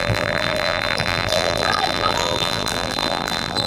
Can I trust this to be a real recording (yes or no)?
no